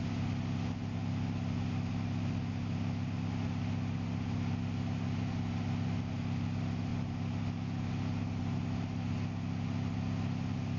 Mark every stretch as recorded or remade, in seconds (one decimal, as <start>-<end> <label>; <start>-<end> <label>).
0.0-10.8 recorded